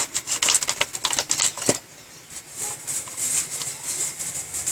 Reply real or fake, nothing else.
real